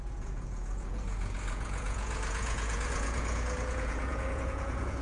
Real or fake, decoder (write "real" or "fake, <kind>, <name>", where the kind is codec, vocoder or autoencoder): fake, vocoder, Vocos